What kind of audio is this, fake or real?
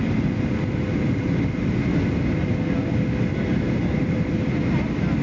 real